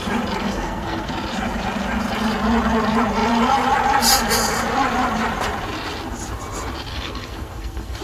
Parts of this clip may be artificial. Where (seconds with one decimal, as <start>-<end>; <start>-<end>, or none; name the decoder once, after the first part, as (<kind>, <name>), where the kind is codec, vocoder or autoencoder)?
0.4-1.1 (codec, SNAC); 6.9-8.0